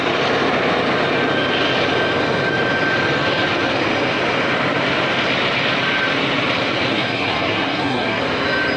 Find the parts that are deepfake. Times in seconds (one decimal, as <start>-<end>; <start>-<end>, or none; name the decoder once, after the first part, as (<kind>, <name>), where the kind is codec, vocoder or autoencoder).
6.9-8.2 (codec, SNAC)